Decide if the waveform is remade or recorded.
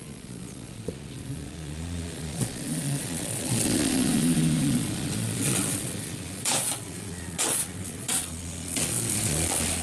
remade